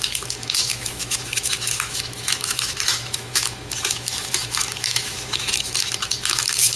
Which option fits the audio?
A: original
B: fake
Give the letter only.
B